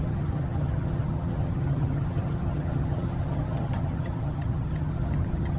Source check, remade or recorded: remade